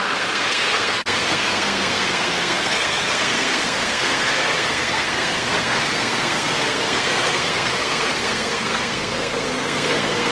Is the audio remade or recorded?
remade